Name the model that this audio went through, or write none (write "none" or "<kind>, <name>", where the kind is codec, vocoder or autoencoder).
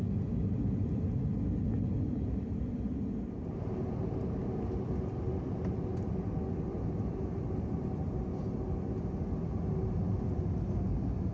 none